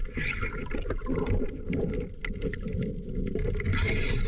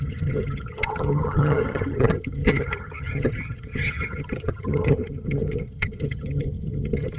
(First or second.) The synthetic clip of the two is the second